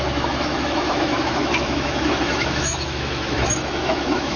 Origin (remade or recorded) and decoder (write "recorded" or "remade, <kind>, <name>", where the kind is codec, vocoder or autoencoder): remade, autoencoder, DAC-VAE